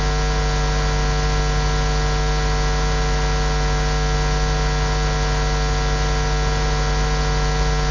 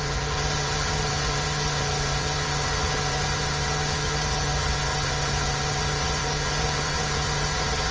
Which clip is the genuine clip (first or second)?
first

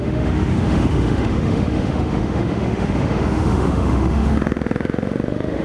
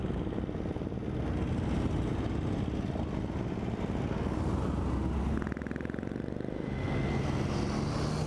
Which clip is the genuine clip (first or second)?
second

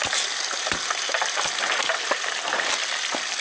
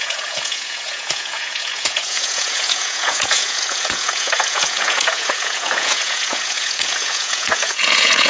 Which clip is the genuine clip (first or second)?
first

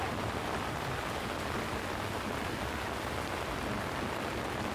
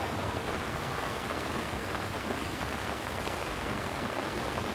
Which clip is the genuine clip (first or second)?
first